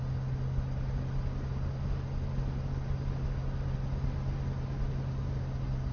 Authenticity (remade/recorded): recorded